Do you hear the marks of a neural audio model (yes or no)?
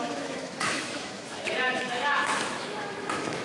yes